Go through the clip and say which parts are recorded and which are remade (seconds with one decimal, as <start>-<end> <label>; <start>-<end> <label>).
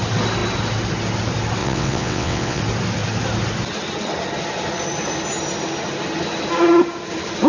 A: 0.0-1.6 recorded; 1.6-2.6 remade; 2.6-7.5 recorded